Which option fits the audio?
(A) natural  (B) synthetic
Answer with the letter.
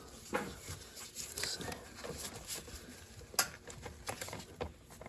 A